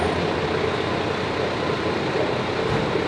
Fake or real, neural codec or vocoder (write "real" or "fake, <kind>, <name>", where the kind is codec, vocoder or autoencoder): real